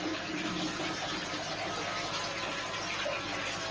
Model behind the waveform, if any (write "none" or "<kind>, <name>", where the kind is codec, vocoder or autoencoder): none